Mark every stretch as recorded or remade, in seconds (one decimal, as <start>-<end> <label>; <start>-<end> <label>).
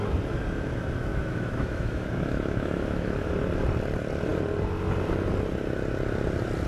0.0-1.1 recorded; 1.1-3.3 remade; 3.3-6.7 recorded